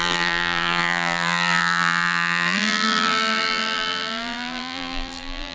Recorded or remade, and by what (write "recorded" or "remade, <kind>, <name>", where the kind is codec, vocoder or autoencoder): remade, vocoder, BigVGAN v2